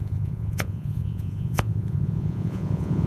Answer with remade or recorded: remade